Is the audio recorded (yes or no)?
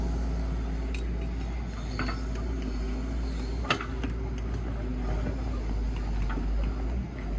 yes